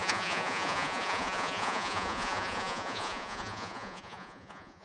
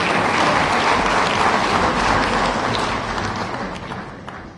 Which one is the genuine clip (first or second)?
second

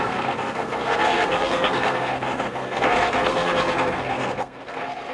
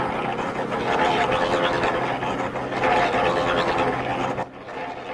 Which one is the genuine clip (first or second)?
second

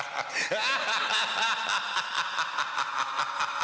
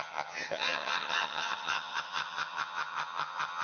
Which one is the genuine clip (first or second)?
first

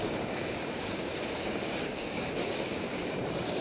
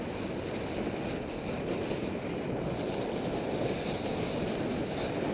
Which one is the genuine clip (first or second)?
second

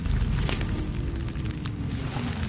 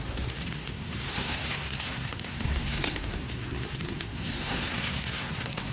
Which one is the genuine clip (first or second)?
first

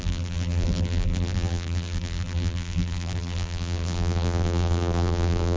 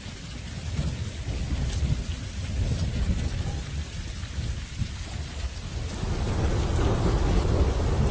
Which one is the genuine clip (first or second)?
second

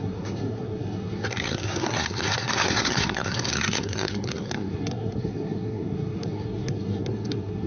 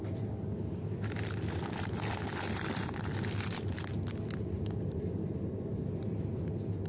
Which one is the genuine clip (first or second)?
second